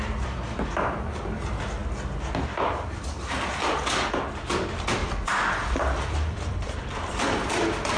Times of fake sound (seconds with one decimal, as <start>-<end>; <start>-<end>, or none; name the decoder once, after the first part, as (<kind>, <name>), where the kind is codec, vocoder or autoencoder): 5.0-8.0 (vocoder, BigVGAN v2)